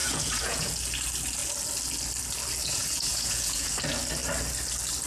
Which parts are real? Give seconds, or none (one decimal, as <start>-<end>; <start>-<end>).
0.7-2.6; 3.8-5.1